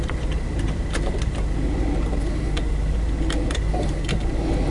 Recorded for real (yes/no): no